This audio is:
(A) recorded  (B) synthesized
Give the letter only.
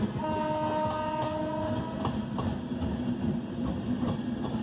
A